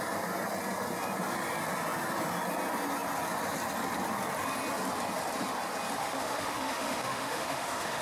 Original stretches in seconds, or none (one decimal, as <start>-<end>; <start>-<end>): 0.0-6.0